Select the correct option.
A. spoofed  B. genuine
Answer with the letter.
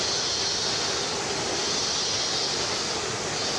B